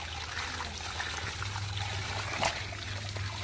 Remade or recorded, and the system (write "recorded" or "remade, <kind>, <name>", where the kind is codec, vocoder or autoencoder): recorded